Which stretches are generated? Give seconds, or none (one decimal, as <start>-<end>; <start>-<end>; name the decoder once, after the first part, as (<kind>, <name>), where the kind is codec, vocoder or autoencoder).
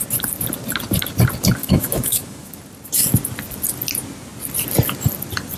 1.6-2.6 (autoencoder, DAC-VAE)